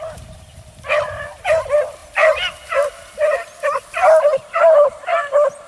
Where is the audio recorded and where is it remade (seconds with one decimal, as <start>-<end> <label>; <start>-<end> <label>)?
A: 0.0-2.0 remade; 2.0-4.6 recorded; 4.6-5.7 remade